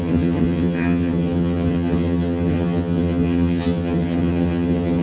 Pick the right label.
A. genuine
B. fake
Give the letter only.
B